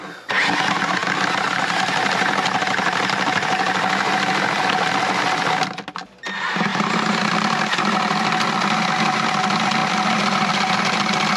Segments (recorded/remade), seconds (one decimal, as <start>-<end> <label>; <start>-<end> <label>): 0.0-6.7 recorded; 6.7-8.5 remade; 8.5-11.4 recorded

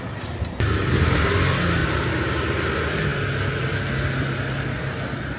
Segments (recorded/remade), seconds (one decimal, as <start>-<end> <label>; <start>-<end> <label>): 0.0-1.8 recorded; 1.8-2.7 remade; 2.7-5.4 recorded

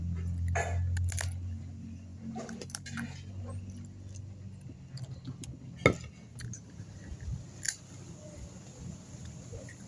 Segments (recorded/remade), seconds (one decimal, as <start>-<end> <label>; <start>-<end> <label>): 0.0-2.1 recorded; 2.1-3.3 remade; 3.3-6.3 recorded; 6.3-6.9 remade; 6.9-9.9 recorded

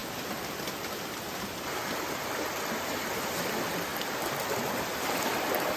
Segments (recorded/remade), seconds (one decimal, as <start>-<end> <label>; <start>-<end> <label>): 0.0-5.8 recorded

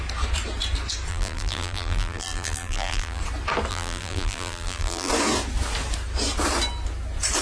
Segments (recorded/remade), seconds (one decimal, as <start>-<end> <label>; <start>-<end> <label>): 0.0-1.1 recorded; 1.1-3.2 remade; 3.2-3.7 recorded; 3.7-5.1 remade; 5.1-7.4 recorded

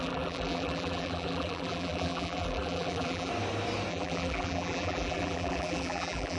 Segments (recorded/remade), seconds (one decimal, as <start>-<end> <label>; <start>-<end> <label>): 0.0-3.3 remade; 3.3-3.9 recorded; 3.9-6.4 remade

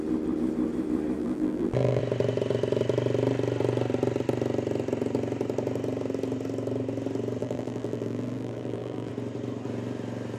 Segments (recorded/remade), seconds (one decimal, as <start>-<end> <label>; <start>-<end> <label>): 0.0-1.2 recorded; 1.2-2.0 remade; 2.0-7.4 recorded; 7.4-9.1 remade; 9.1-10.4 recorded